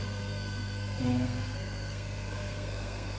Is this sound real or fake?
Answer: fake